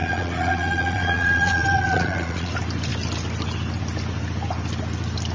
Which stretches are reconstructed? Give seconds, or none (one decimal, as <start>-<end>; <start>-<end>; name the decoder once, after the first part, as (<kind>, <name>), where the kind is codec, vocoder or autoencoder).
0.0-2.5 (vocoder, Vocos)